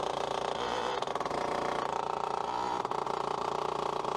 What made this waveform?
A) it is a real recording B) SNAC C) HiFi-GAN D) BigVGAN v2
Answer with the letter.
D